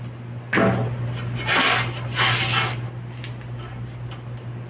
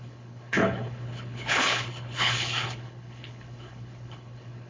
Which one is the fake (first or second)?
second